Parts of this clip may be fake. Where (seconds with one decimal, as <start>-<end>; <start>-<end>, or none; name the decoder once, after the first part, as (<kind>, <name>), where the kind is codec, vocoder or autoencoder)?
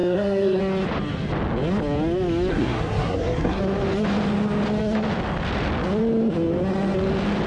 0.0-0.6 (codec, SNAC); 2.5-3.6